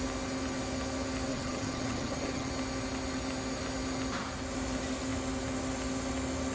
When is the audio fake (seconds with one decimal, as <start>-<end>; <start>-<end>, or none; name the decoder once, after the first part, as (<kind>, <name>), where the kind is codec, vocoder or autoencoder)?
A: 1.3-2.5 (vocoder, HiFi-GAN)